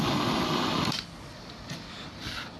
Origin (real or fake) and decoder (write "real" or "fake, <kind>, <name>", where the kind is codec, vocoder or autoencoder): real